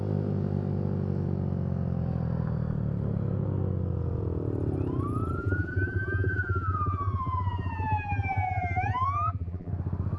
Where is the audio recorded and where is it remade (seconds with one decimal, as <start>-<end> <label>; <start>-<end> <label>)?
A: 0.0-5.4 recorded; 5.4-9.7 remade; 9.7-10.2 recorded